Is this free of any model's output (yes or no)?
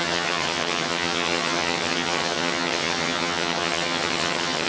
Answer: no